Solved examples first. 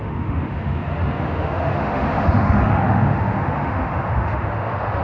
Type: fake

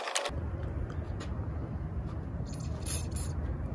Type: real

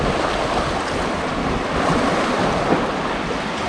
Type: real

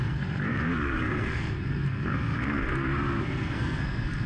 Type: fake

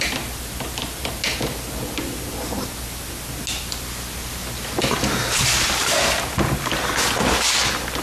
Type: real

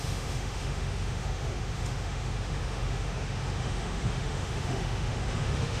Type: fake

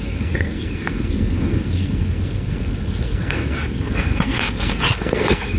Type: fake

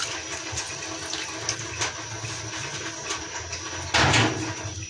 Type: real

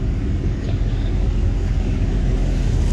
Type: fake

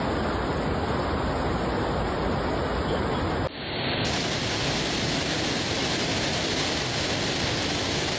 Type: real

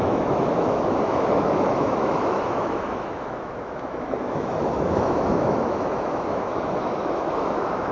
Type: fake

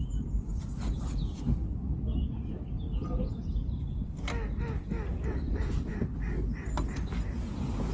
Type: real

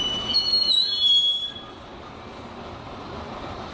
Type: real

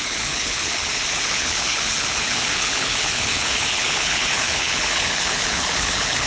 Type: fake